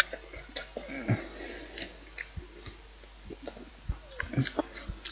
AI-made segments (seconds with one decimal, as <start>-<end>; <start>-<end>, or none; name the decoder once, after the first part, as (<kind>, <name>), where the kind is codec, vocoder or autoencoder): none